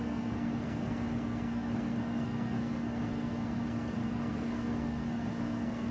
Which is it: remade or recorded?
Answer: remade